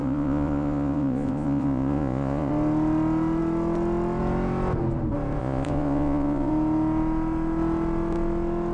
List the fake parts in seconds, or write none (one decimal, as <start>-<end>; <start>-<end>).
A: 0.0-2.5; 5.4-6.5